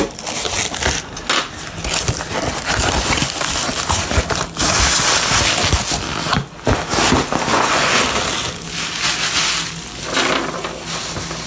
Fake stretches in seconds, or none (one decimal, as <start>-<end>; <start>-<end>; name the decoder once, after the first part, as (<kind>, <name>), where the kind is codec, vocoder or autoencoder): 7.5-8.0 (vocoder, Vocos)